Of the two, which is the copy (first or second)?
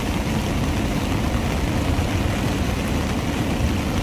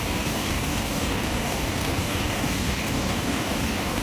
second